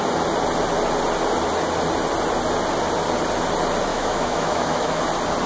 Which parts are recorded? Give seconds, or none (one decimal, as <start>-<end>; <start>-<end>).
0.0-3.9; 5.0-5.5